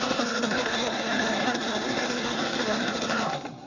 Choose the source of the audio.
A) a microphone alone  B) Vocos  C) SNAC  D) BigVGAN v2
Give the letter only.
C